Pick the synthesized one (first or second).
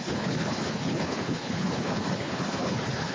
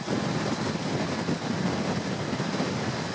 first